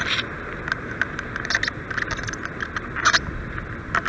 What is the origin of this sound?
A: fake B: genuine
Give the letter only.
B